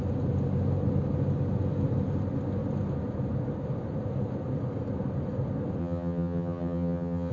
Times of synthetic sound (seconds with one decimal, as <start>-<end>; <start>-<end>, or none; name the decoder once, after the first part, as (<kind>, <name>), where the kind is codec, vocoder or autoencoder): 5.8-7.3 (vocoder, HiFi-GAN)